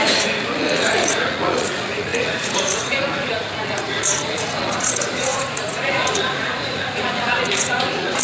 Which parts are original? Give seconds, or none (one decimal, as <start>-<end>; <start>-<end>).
none